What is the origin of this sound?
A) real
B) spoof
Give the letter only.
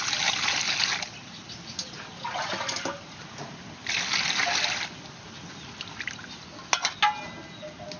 A